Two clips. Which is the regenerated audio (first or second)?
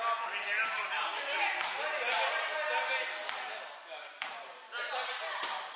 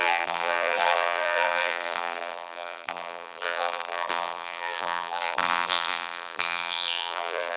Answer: second